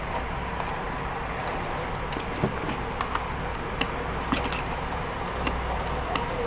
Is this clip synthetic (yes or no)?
no